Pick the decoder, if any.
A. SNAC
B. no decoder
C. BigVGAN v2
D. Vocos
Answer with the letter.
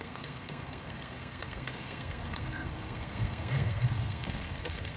A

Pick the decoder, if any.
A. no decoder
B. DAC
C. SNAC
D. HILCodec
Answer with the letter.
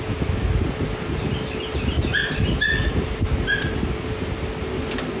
A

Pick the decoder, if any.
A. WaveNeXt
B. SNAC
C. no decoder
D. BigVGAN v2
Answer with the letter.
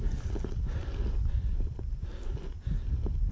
C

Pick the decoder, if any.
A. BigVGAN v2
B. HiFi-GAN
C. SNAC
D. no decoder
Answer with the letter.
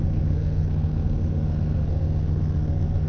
C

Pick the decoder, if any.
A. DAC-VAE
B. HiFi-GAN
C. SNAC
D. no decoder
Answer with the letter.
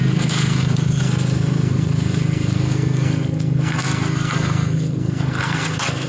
C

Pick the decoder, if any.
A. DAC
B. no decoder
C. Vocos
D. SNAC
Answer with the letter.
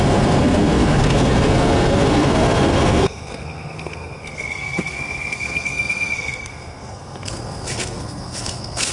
D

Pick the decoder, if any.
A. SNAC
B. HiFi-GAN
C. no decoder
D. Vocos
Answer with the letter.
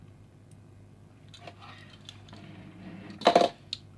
C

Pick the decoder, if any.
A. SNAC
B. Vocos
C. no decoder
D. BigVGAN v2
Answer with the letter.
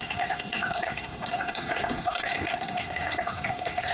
A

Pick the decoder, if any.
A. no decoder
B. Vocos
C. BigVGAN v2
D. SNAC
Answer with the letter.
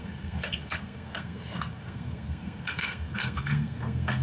D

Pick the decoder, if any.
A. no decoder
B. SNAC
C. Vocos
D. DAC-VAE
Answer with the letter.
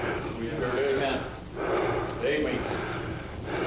A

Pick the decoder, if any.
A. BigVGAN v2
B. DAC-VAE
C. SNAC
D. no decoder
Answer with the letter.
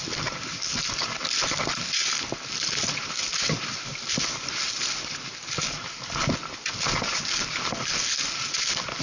D